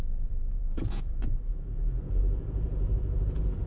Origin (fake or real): fake